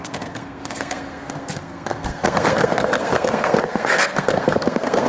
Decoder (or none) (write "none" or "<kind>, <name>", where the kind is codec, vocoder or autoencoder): codec, SNAC